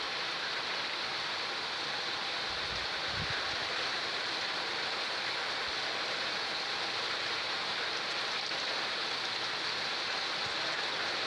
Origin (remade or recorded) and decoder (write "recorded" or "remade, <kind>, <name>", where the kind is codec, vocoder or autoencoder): remade, vocoder, BigVGAN v2